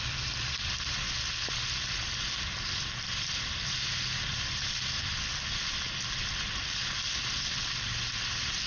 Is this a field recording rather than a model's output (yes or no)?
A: yes